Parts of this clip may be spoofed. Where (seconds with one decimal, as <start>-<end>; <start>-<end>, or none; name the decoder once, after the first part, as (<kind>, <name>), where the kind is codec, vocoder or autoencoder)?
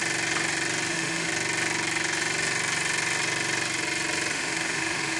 0.9-1.3 (autoencoder, DAC-VAE); 4.3-5.2